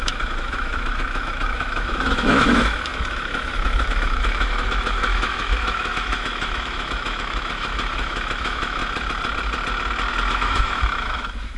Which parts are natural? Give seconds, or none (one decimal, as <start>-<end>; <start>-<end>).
8.8-10.3